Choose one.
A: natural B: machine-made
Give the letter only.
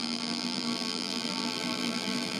B